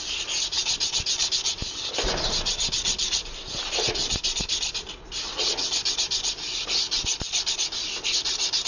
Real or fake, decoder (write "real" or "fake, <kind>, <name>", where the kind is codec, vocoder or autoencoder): real